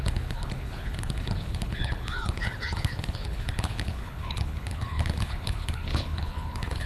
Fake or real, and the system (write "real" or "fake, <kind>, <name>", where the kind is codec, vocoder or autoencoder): fake, codec, HILCodec